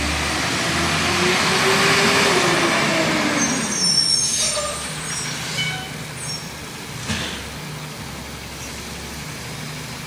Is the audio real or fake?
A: real